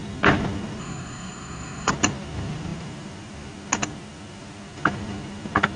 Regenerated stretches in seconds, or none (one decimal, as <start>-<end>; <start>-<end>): 0.8-1.9

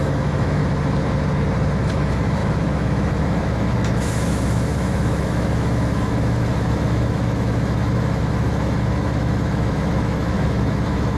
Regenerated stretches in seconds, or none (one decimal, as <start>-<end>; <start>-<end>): 0.0-0.6; 1.9-11.2

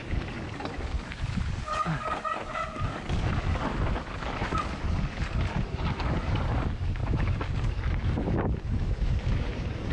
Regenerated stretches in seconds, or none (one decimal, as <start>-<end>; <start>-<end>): 0.0-9.9

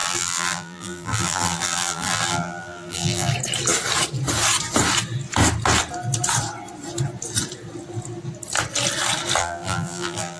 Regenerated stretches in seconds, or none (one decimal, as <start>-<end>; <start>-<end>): 0.0-3.3; 9.4-10.4